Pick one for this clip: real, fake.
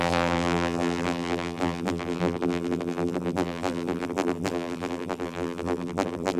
fake